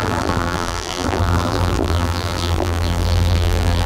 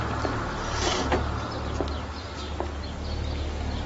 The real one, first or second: second